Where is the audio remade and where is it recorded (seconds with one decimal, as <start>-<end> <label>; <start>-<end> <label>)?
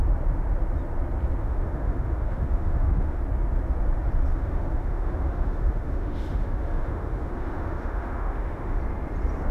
0.0-1.4 recorded; 1.4-3.2 remade; 3.2-4.3 recorded; 4.3-8.8 remade; 8.8-9.5 recorded